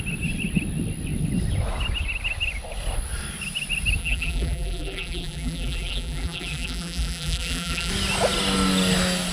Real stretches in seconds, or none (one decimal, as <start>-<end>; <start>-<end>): 0.0-4.0; 7.9-9.3